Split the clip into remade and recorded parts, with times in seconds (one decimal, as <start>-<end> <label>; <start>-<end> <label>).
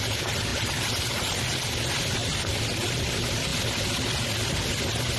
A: 0.0-0.5 recorded; 0.5-1.7 remade; 1.7-2.2 recorded; 2.2-3.1 remade; 3.1-5.2 recorded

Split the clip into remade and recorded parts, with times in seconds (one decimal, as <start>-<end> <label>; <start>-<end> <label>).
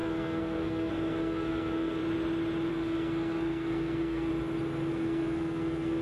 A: 0.0-2.0 remade; 2.0-2.7 recorded; 2.7-4.3 remade; 4.3-4.9 recorded; 4.9-6.0 remade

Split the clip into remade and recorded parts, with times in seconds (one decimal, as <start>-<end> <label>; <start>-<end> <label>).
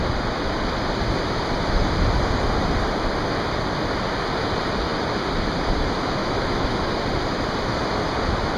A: 0.0-6.2 recorded; 6.2-6.8 remade; 6.8-8.6 recorded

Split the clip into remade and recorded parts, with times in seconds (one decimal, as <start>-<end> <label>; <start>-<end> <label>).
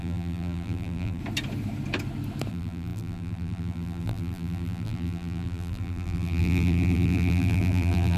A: 0.0-1.2 remade; 1.2-2.5 recorded; 2.5-8.2 remade